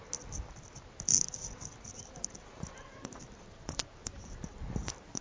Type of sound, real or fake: real